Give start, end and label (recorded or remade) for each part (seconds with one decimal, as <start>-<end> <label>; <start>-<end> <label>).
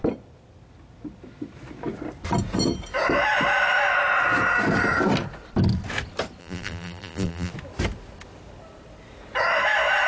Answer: 0.0-6.4 recorded; 6.4-7.5 remade; 7.5-10.1 recorded